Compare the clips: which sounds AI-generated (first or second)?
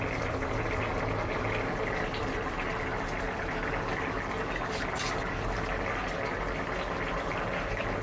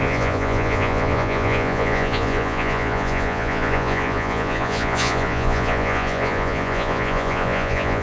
second